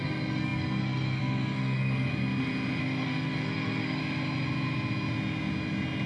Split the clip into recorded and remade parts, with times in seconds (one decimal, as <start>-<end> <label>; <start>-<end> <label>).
0.0-2.1 remade; 2.1-2.8 recorded; 2.8-4.0 remade; 4.0-6.1 recorded